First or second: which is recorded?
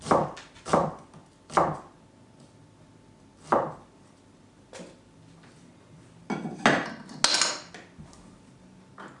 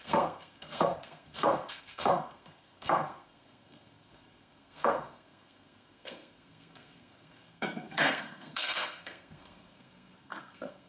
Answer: first